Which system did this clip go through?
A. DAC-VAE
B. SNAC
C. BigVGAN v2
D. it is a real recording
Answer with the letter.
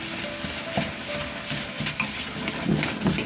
D